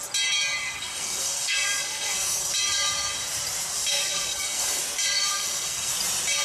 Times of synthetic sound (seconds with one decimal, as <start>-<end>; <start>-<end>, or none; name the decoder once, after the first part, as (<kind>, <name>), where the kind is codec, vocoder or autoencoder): 0.6-2.5 (codec, SNAC); 3.9-4.8; 5.3-5.9